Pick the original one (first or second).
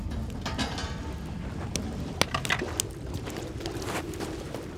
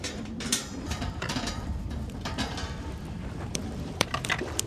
first